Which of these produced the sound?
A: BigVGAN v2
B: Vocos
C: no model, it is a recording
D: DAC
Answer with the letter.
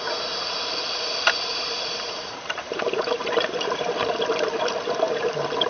A